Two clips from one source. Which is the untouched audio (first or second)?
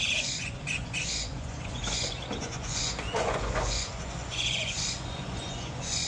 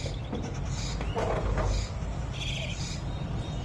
second